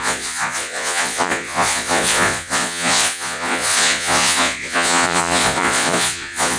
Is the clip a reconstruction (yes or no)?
yes